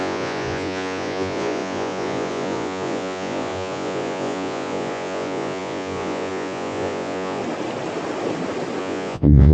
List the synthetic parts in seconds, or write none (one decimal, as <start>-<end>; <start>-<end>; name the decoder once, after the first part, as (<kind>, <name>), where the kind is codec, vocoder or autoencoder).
0.0-7.4 (vocoder, Vocos); 8.8-9.5